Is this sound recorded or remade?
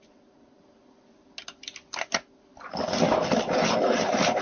recorded